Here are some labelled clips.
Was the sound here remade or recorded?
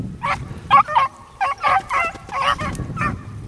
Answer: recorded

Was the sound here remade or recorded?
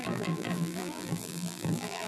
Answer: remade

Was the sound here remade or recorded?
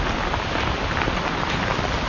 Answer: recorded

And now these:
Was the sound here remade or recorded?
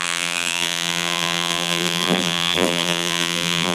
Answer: remade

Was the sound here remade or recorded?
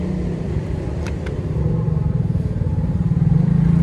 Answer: remade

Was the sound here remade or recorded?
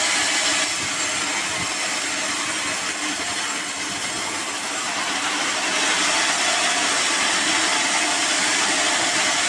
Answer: recorded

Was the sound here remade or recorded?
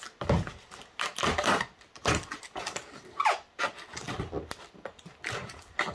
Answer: recorded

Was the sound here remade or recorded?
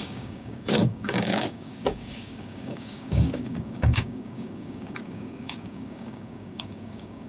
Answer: remade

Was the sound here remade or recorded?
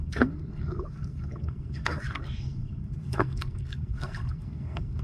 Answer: remade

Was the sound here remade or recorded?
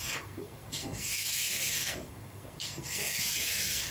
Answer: remade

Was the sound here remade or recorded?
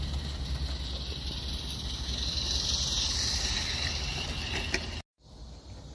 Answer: recorded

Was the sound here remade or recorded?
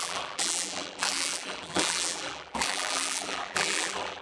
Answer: remade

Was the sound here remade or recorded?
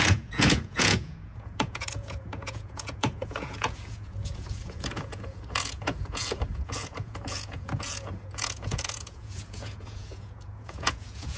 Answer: remade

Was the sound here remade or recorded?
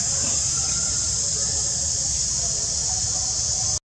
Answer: recorded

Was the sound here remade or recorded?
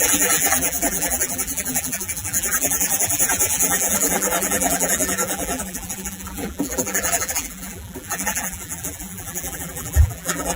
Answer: remade